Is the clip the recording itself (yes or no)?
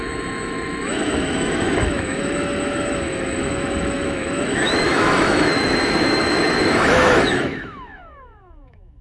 no